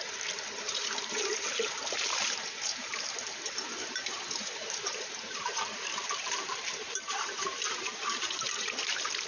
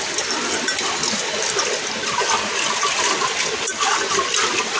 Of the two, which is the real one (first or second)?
second